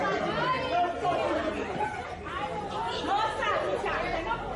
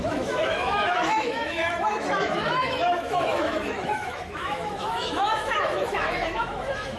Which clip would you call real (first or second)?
first